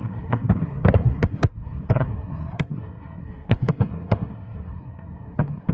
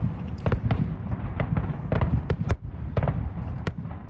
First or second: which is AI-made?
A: first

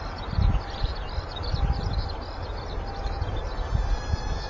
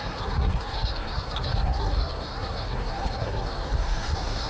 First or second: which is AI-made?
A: second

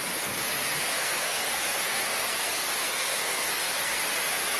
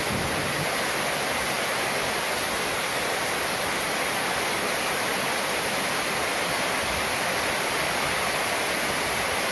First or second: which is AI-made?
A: first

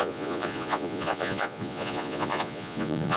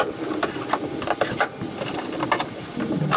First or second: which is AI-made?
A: first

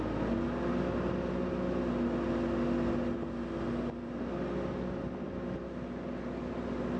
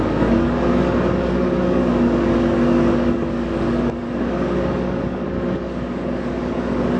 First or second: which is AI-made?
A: second